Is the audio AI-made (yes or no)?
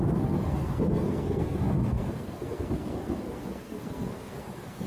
yes